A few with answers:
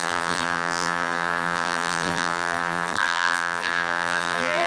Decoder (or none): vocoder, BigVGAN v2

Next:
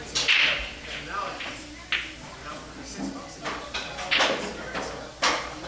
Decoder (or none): none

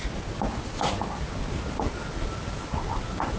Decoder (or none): none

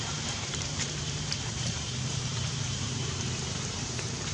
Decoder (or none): vocoder, BigVGAN v2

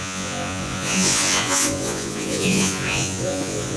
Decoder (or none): vocoder, Vocos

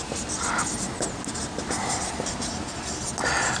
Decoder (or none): none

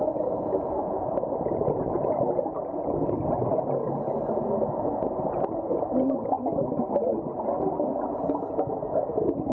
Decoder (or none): none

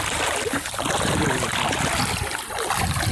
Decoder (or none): none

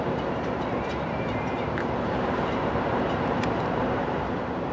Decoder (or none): vocoder, BigVGAN v2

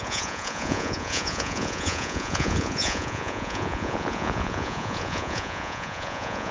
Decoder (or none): vocoder, Vocos